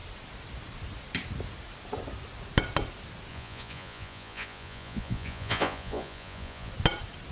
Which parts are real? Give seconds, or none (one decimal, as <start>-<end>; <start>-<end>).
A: 0.0-3.3; 6.7-7.3